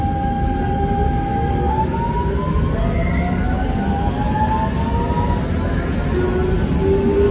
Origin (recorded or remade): recorded